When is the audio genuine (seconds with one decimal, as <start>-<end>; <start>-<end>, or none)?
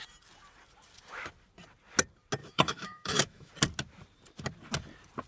0.0-2.4; 3.5-5.3